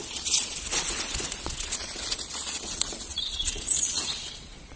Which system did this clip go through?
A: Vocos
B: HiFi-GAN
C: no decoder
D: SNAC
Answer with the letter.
A